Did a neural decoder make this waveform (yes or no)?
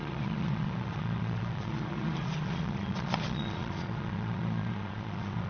yes